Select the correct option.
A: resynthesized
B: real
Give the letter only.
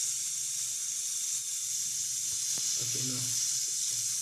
B